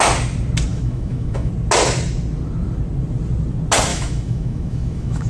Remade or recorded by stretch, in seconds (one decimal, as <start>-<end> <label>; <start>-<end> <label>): 0.0-0.7 recorded; 0.7-1.5 remade; 1.5-3.9 recorded; 3.9-5.3 remade